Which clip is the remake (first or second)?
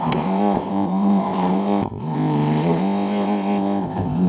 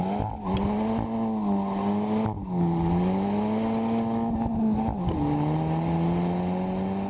first